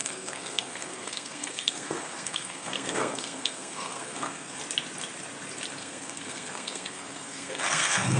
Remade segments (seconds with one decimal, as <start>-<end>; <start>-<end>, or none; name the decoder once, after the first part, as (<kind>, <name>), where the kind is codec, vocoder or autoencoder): 0.0-4.6 (codec, SNAC); 5.8-8.2